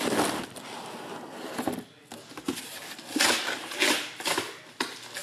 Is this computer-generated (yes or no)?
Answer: no